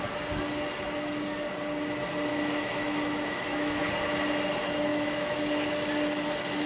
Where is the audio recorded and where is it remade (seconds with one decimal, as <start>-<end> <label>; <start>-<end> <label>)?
0.0-2.3 recorded; 2.3-3.8 remade; 3.8-4.9 recorded; 4.9-5.4 remade; 5.4-6.7 recorded